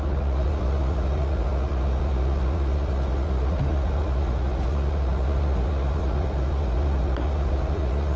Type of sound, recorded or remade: remade